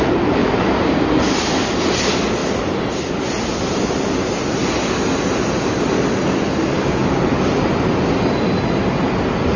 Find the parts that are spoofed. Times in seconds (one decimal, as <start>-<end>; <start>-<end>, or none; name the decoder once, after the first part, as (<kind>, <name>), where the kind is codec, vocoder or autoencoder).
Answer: 0.4-1.2 (vocoder, BigVGAN v2)